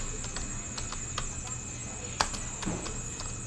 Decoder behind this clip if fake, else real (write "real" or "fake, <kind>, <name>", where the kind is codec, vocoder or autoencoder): real